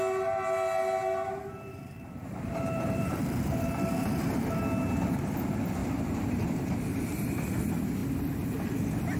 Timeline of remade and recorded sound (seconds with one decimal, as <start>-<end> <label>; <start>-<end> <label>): 0.0-1.7 recorded; 1.7-4.1 remade; 4.1-5.8 recorded; 5.8-7.0 remade; 7.0-8.0 recorded; 8.0-9.2 remade